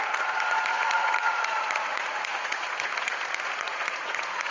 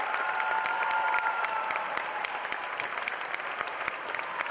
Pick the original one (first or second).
second